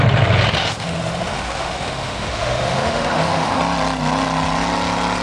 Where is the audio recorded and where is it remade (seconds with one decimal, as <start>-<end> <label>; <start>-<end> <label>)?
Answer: 0.0-0.6 recorded; 0.6-3.6 remade; 3.6-5.2 recorded